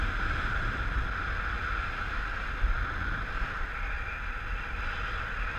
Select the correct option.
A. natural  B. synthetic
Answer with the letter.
A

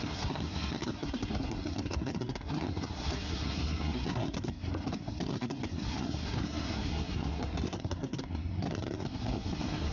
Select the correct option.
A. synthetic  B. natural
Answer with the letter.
A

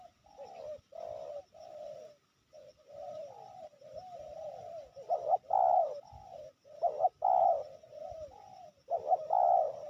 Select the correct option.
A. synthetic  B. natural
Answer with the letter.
B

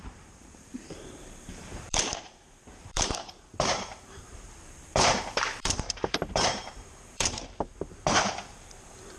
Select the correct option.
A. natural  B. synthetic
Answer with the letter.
B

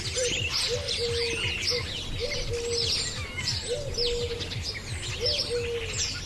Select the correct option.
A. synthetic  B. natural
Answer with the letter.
B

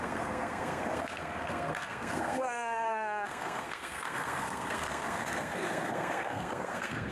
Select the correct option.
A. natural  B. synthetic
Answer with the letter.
B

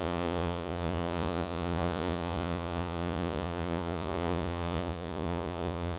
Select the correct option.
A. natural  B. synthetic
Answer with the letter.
B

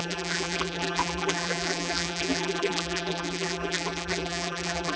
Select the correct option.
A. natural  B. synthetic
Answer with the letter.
B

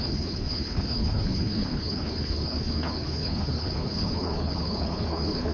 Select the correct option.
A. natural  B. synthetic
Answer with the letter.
B